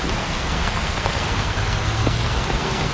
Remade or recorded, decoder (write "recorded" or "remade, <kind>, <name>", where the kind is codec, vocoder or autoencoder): remade, codec, SNAC